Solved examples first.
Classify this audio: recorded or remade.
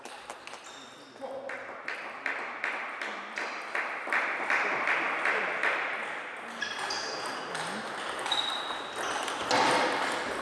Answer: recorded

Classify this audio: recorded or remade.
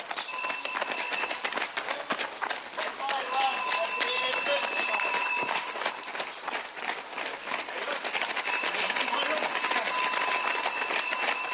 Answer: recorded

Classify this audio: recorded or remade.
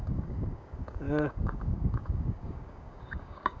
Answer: remade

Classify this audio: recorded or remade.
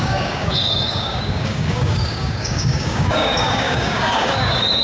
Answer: remade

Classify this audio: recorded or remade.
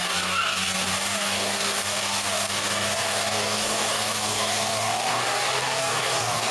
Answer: remade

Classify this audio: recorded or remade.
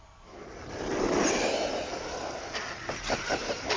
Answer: recorded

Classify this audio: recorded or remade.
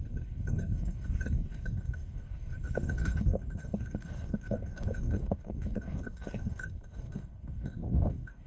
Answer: remade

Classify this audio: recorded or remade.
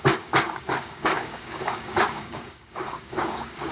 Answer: remade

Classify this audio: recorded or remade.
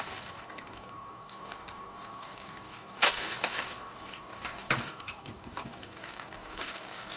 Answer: remade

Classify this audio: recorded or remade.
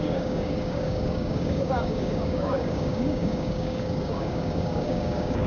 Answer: remade